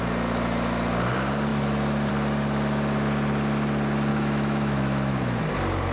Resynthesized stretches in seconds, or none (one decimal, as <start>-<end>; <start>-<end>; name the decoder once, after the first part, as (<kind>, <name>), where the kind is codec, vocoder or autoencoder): 4.1-5.5 (autoencoder, DAC-VAE)